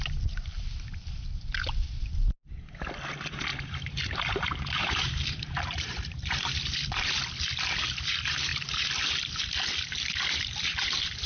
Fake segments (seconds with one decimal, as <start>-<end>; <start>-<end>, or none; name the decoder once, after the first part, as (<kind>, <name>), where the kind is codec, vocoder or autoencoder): 3.5-6.3 (vocoder, BigVGAN v2)